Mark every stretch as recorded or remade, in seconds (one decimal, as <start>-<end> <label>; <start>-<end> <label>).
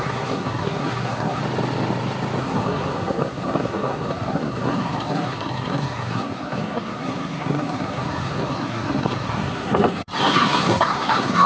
0.0-1.4 remade; 1.4-2.4 recorded; 2.4-11.5 remade